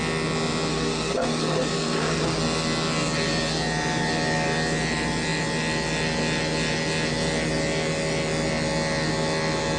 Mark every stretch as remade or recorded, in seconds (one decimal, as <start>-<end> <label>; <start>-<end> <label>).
0.0-0.7 recorded; 0.7-2.4 remade; 2.4-9.8 recorded